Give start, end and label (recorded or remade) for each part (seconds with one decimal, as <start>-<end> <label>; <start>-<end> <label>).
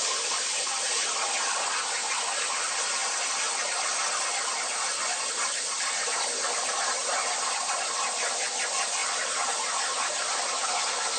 0.0-3.0 remade; 3.0-5.2 recorded; 5.2-9.0 remade; 9.0-9.7 recorded; 9.7-11.2 remade